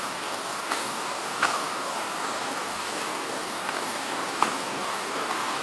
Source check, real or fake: fake